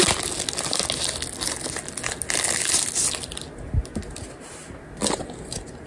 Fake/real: real